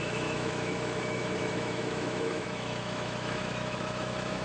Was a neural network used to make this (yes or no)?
yes